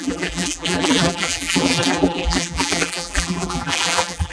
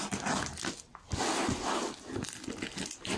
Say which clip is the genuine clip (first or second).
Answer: second